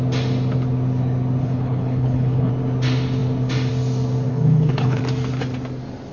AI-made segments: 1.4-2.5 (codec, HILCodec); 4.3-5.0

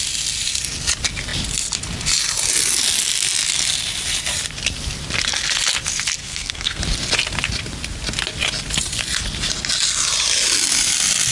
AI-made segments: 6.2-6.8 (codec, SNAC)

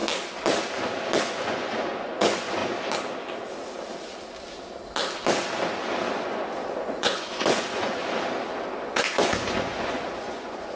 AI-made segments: 1.2-2.6 (vocoder, Vocos); 6.2-8.0; 8.9-10.8

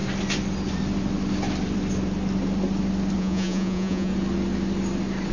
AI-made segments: 3.2-4.1 (vocoder, Vocos)